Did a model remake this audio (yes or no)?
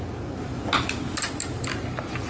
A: no